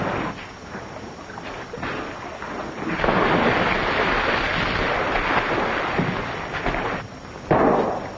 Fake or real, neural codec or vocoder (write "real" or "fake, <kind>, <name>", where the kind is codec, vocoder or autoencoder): real